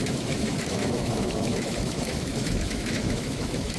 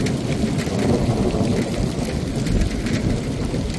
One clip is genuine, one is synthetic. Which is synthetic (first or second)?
first